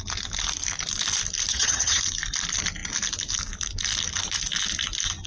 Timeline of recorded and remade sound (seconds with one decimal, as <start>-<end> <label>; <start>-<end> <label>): 0.0-1.5 recorded; 1.5-2.0 remade; 2.0-5.3 recorded